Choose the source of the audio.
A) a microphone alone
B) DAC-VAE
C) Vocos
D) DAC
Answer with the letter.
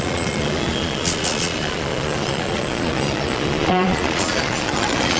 C